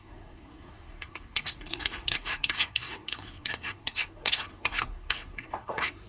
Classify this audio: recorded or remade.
remade